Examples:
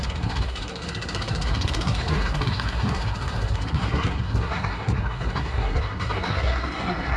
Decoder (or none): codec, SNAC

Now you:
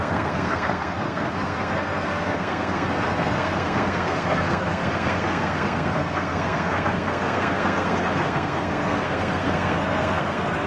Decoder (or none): codec, SNAC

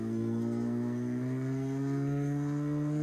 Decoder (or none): codec, SNAC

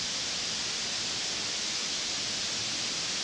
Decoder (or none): none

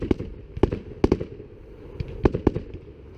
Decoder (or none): none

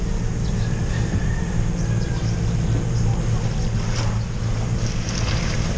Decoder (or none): none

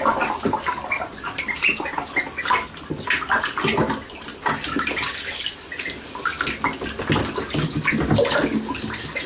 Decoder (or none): none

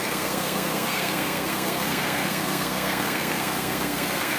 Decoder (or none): codec, SNAC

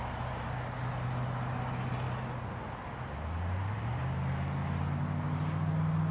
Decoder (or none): none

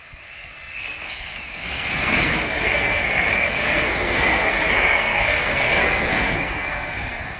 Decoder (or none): codec, SNAC